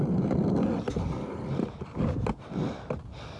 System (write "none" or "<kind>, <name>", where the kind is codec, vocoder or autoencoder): none